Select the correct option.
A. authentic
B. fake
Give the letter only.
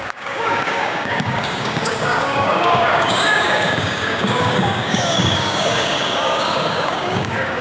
B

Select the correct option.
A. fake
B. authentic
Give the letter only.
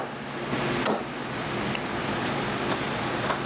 B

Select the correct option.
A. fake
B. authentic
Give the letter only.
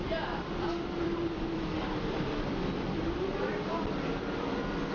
A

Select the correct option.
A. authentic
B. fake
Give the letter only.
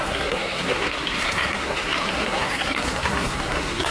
B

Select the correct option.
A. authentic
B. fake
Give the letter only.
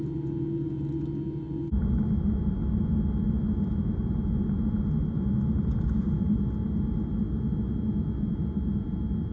A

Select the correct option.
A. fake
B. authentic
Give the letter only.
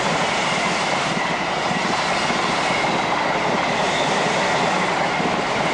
B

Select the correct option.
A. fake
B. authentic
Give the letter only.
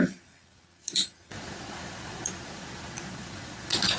A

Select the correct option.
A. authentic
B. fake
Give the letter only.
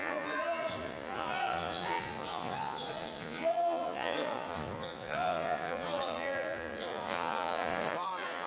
B